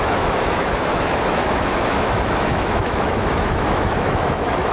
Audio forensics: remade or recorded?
remade